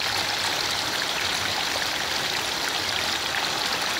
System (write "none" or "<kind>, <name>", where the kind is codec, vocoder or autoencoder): vocoder, BigVGAN v2